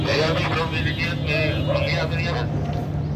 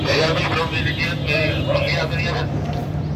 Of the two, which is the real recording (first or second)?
first